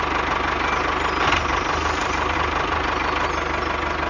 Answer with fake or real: real